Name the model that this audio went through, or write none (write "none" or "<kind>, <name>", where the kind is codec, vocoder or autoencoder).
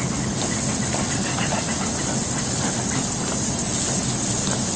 none